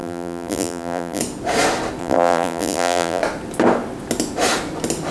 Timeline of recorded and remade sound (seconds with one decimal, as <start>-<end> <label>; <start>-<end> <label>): 0.0-1.2 remade; 1.2-2.0 recorded; 2.0-3.2 remade; 3.2-5.1 recorded